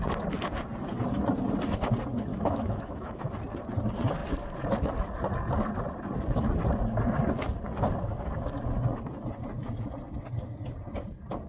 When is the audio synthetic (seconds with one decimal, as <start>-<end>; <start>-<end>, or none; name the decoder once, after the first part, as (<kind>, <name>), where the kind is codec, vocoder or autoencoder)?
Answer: 2.3-3.3 (autoencoder, DAC-VAE)